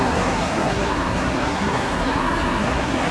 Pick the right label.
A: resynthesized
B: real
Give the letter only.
A